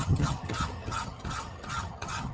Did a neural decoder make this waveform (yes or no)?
yes